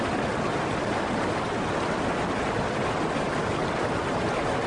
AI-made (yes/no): no